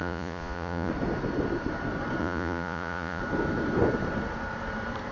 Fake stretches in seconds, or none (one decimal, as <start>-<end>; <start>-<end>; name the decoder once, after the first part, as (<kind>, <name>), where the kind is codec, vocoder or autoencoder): 0.0-0.9 (vocoder, Vocos); 2.2-3.2